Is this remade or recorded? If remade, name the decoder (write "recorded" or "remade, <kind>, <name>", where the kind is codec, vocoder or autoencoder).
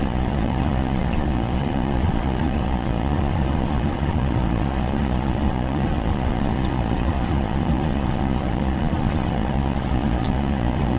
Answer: remade, vocoder, Vocos